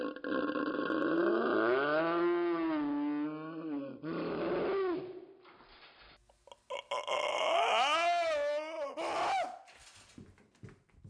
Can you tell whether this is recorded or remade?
recorded